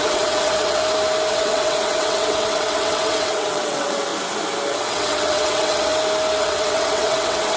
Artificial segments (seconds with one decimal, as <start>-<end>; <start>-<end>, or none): 0.0-0.8; 1.3-4.1; 4.7-5.9; 6.4-7.6